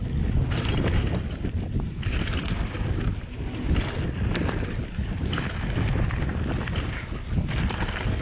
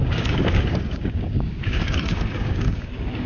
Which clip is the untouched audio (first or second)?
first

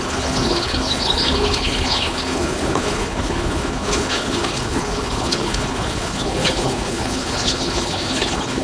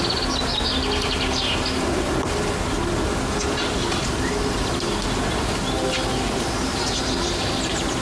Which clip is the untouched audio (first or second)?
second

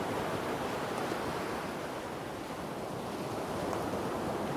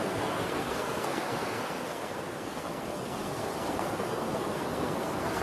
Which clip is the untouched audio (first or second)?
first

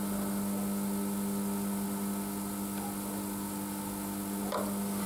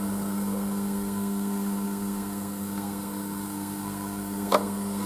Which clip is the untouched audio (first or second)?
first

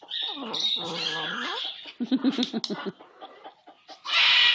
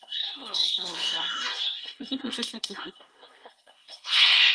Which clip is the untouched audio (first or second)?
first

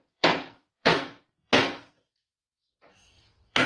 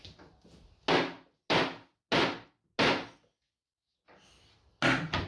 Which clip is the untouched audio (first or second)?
second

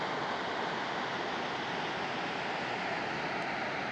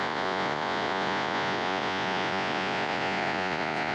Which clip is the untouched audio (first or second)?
first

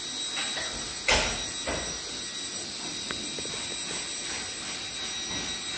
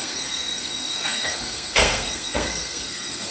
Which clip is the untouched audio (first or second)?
first